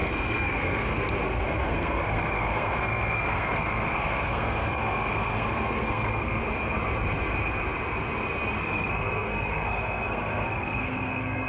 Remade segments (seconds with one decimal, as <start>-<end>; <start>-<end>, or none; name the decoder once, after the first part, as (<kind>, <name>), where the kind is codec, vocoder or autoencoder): 0.0-6.4 (codec, SNAC); 8.6-11.5